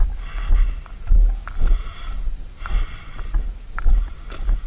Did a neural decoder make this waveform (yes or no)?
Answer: no